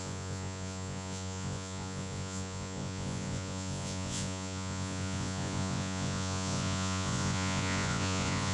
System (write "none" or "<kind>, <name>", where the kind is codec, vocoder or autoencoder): vocoder, Vocos